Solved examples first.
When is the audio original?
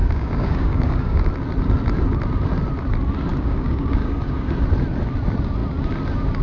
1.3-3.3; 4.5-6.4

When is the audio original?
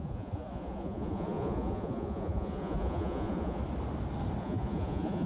3.6-4.4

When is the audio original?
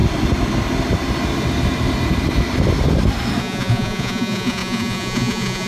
0.0-3.4